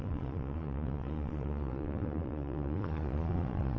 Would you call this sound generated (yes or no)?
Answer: yes